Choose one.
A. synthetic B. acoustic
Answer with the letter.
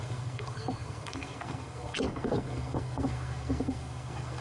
A